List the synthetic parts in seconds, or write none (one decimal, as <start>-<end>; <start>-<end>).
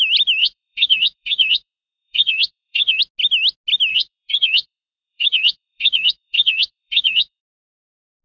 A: 0.4-3.0; 3.9-7.4